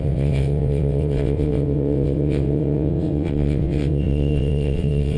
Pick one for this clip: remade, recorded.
remade